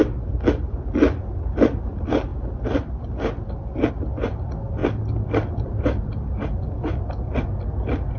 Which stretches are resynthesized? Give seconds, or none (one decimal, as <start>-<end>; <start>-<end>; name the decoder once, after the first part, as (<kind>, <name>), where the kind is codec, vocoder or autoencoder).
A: none